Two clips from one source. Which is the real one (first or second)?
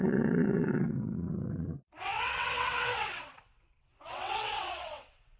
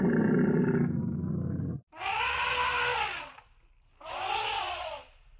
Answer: second